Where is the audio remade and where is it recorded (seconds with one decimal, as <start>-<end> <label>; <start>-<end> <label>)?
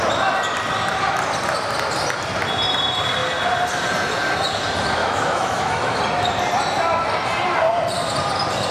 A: 0.0-5.0 recorded; 5.0-6.0 remade; 6.0-8.7 recorded